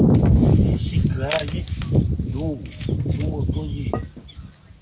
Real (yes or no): yes